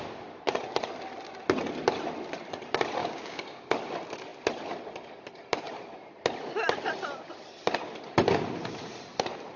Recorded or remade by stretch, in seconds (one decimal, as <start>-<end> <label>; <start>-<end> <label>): 0.0-3.0 recorded; 3.0-3.7 remade; 3.7-9.6 recorded